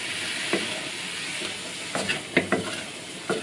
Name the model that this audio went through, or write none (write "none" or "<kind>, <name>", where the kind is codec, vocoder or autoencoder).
none